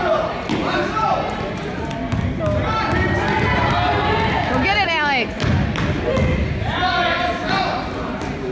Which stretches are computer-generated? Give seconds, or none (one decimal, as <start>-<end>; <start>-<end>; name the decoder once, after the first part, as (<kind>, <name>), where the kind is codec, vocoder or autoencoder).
none